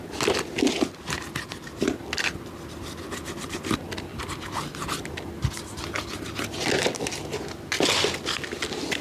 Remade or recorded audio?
recorded